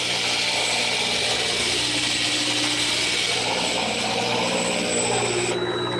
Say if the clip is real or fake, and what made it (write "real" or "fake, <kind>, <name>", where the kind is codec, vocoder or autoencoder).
fake, vocoder, BigVGAN v2